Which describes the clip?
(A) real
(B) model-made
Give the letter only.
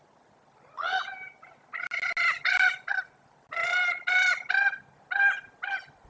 A